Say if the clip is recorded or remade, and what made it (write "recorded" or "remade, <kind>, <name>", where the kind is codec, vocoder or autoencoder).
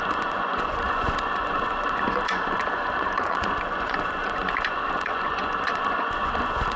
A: remade, vocoder, Vocos